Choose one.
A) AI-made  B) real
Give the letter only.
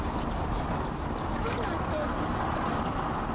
B